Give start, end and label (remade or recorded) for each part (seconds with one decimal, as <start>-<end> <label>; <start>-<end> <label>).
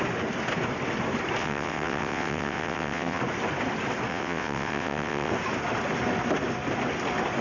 0.0-1.4 recorded; 1.4-3.2 remade; 3.2-4.1 recorded; 4.1-5.3 remade; 5.3-7.4 recorded